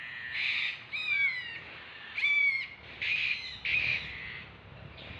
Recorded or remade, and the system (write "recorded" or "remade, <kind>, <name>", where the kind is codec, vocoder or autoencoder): recorded